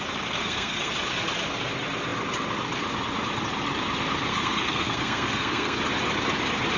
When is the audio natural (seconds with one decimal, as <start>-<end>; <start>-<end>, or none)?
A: 0.0-0.4; 0.9-4.3; 5.8-6.8